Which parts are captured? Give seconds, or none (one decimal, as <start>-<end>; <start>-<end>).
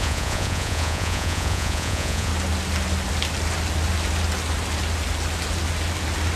2.3-6.4